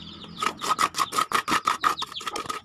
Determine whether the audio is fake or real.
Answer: real